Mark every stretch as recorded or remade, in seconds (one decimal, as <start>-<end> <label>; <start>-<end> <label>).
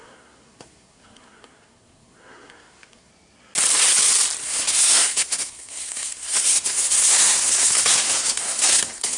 0.0-3.1 remade; 3.1-4.4 recorded; 4.4-9.2 remade